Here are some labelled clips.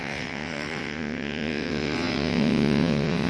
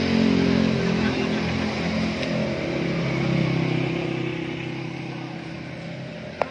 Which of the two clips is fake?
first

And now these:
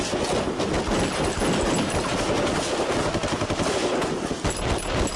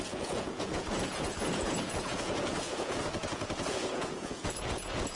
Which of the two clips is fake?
second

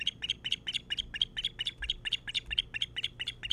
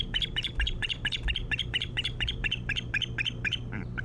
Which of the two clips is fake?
second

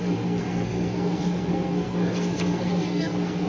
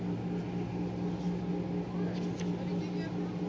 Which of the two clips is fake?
first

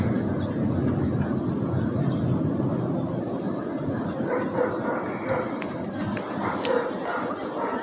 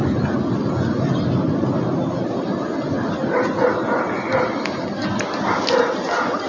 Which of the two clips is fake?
first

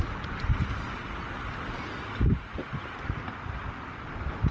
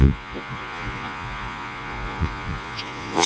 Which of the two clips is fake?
second